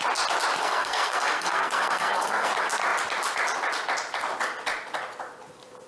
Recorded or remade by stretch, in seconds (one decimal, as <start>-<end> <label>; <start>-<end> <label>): 0.0-0.6 recorded; 0.6-2.5 remade; 2.5-5.9 recorded